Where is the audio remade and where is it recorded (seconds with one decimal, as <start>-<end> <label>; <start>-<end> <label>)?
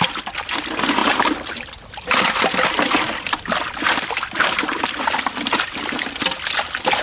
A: 0.0-1.0 recorded; 1.0-5.2 remade; 5.2-7.0 recorded